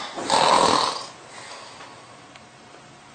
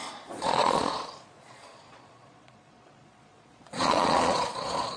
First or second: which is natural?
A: first